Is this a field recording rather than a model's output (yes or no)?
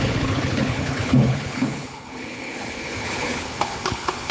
no